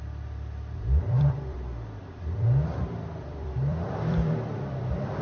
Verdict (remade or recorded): remade